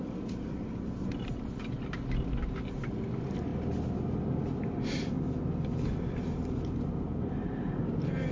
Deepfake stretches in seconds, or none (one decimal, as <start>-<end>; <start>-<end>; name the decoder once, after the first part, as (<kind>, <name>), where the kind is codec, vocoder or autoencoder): none